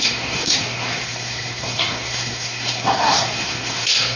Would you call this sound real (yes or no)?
no